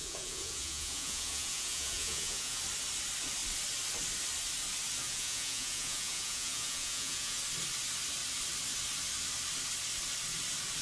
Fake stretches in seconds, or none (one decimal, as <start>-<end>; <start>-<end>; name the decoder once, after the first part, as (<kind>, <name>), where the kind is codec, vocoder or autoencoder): 0.0-2.6 (vocoder, Vocos); 5.0-7.4